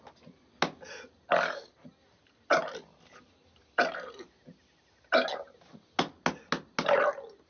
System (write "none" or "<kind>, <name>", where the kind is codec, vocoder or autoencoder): none